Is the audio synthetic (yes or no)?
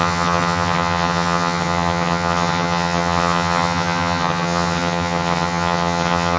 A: yes